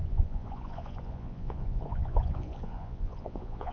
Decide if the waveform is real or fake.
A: fake